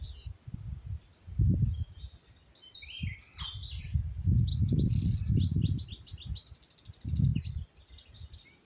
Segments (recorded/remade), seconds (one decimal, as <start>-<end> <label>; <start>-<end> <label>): 0.0-1.7 remade; 1.7-3.8 recorded; 3.8-8.7 remade